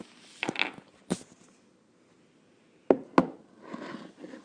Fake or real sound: real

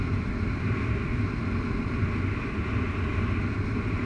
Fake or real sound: real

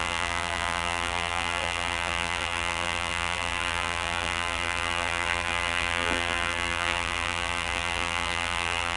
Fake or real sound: fake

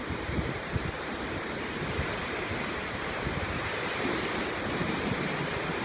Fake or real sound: fake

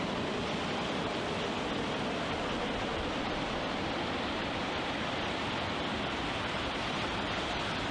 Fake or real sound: real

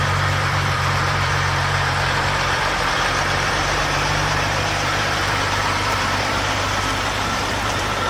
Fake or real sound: fake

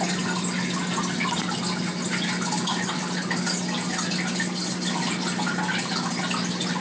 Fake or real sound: real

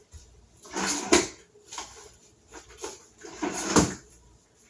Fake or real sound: fake